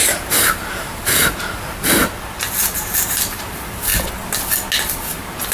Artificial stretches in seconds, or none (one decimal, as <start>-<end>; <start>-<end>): 0.0-2.0; 2.6-3.9; 4.9-5.5